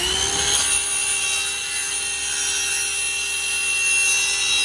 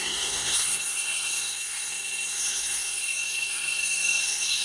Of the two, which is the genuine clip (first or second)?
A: first